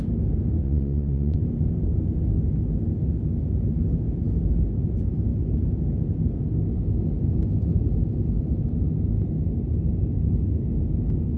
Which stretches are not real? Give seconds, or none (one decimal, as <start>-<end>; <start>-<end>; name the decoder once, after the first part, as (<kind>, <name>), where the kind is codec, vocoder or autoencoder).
0.6-1.4 (vocoder, Vocos)